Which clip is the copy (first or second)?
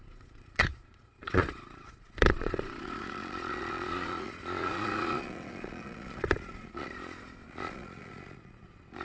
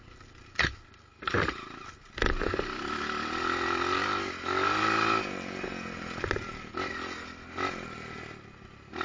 first